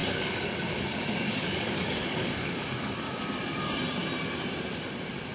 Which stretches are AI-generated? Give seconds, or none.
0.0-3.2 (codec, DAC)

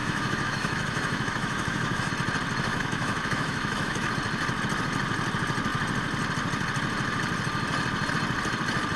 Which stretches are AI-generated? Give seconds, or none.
0.0-2.1 (autoencoder, DAC-VAE); 2.7-4.1

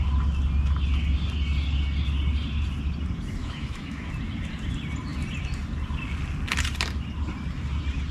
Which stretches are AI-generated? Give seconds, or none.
3.4-4.1 (autoencoder, DAC-VAE)

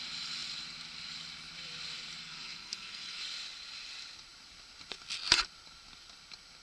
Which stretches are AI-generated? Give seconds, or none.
2.2-3.2 (codec, SNAC)

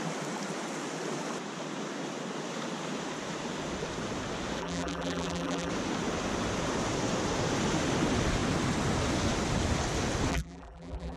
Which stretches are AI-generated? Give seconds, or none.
4.6-5.7 (vocoder, BigVGAN v2); 10.3-11.2

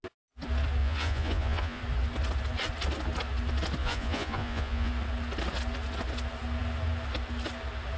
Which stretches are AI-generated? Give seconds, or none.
0.8-1.8 (vocoder, Vocos); 3.8-4.9

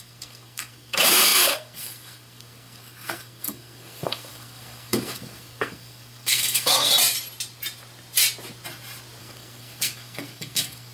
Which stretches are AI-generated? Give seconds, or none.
0.0-6.9 (codec, SNAC); 9.2-10.9